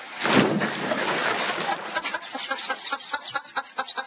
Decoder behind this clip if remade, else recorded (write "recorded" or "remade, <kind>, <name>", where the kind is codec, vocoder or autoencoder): recorded